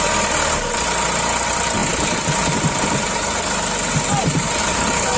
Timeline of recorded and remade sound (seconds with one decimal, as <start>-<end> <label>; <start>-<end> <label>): 0.0-5.2 recorded